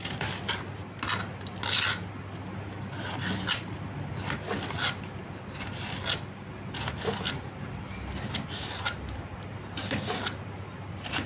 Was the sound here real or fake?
real